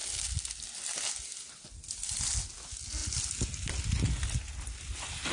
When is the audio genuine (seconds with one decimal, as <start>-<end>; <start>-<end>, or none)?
0.0-5.3